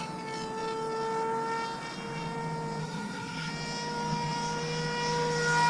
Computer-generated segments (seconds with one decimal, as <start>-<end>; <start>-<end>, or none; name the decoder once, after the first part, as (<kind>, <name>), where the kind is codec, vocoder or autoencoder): 2.8-3.5 (codec, SNAC)